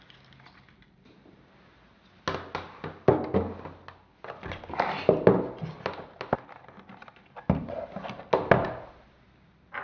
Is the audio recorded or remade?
recorded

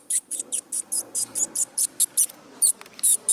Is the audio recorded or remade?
remade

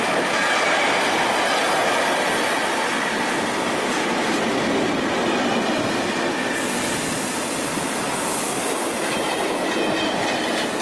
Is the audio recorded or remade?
recorded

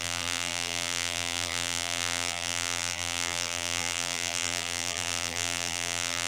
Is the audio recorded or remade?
remade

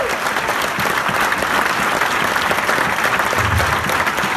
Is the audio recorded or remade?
recorded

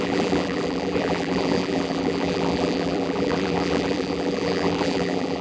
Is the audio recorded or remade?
remade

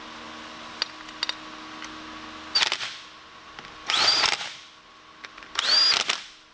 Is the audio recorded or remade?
recorded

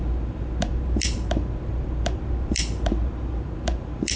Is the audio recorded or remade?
remade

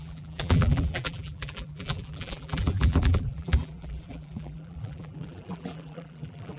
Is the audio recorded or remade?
remade